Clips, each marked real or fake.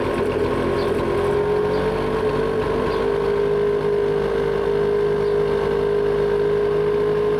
real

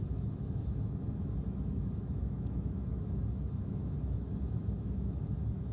fake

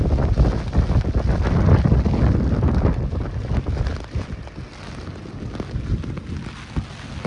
real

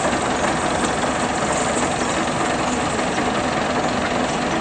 real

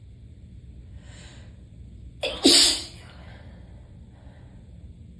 real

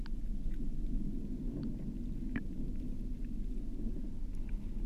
real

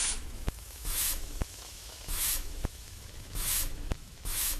fake